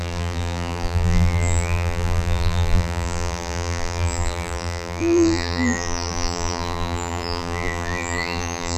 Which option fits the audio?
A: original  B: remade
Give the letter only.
B